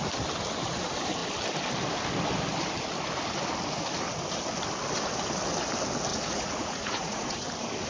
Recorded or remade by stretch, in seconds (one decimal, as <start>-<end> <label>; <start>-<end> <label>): 0.0-6.1 recorded; 6.1-7.4 remade; 7.4-7.9 recorded